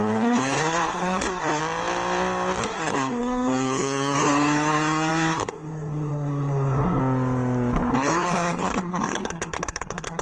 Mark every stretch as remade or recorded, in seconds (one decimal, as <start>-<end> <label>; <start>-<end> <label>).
0.0-1.6 remade; 1.6-2.6 recorded; 2.6-7.0 remade; 7.0-7.9 recorded; 7.9-10.2 remade